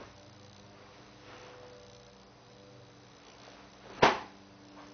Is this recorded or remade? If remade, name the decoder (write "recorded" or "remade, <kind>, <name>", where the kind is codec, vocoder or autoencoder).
recorded